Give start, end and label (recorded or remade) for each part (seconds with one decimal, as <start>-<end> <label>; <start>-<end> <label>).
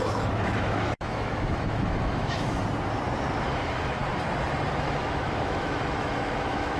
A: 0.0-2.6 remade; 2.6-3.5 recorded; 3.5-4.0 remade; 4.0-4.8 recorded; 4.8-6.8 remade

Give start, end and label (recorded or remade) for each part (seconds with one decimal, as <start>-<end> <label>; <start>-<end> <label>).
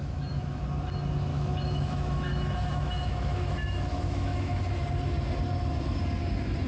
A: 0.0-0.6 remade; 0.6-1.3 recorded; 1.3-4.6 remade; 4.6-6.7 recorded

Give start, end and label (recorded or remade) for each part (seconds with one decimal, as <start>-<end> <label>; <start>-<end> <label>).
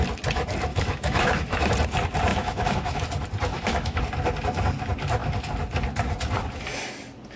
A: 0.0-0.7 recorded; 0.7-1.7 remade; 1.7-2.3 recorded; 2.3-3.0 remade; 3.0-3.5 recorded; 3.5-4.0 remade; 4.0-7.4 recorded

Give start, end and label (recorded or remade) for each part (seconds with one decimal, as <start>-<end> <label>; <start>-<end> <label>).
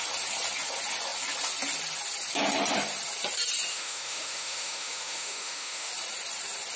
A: 0.0-3.7 recorded; 3.7-5.9 remade; 5.9-6.8 recorded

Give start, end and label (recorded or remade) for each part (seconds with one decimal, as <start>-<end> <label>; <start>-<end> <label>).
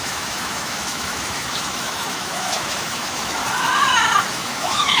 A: 0.0-3.4 remade; 3.4-4.3 recorded; 4.3-5.0 remade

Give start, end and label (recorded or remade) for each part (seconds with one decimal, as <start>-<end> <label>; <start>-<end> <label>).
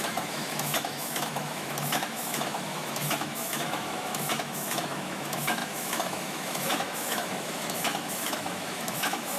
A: 0.0-9.4 remade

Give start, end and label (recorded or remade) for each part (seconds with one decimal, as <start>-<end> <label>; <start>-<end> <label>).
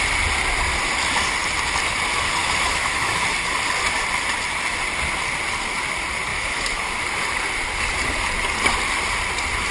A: 0.0-2.4 recorded; 2.4-3.2 remade; 3.2-6.3 recorded; 6.3-7.0 remade; 7.0-9.7 recorded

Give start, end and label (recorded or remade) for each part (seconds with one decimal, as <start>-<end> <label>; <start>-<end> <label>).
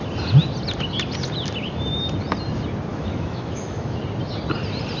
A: 0.0-2.9 recorded; 2.9-4.0 remade; 4.0-5.0 recorded